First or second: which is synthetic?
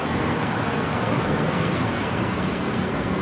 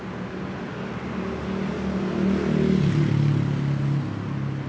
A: first